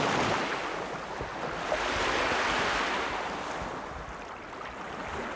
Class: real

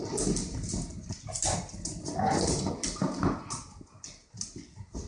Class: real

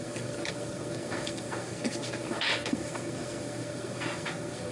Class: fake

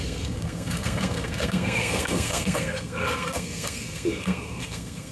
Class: fake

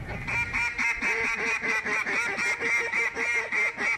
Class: real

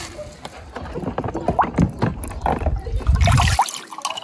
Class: real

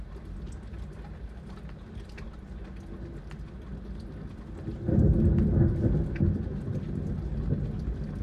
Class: real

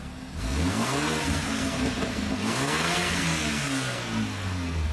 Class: fake